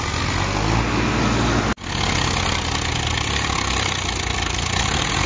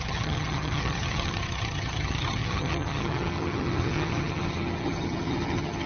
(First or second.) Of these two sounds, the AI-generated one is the second